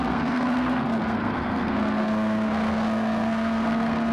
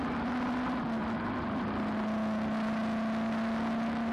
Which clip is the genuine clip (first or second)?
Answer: second